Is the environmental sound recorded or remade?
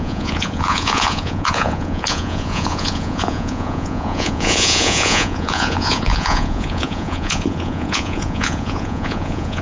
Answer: remade